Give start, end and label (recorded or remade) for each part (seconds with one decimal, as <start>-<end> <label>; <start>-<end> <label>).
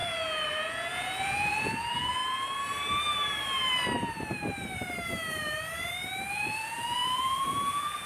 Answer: 0.0-2.2 remade; 2.2-6.3 recorded; 6.3-8.1 remade